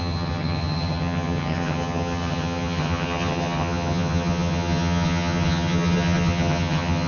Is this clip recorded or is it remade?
remade